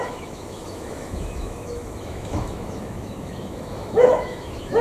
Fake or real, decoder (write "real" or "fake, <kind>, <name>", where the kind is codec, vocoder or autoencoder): fake, autoencoder, DAC-VAE